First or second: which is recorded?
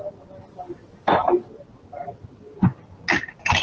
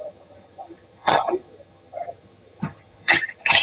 first